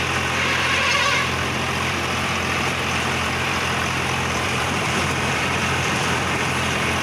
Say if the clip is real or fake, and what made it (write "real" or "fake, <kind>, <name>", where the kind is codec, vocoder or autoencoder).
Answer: fake, vocoder, BigVGAN v2